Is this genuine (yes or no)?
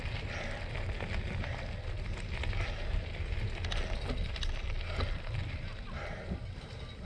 yes